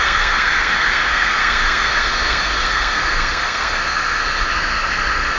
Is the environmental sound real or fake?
fake